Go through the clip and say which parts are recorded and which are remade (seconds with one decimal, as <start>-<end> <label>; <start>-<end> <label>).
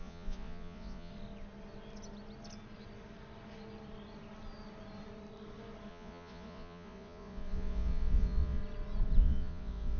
0.0-1.1 remade; 1.1-5.9 recorded; 5.9-8.6 remade; 8.6-9.2 recorded; 9.2-10.0 remade